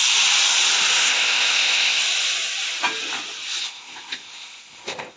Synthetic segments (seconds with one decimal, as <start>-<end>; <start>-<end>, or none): 1.0-2.0; 3.6-5.2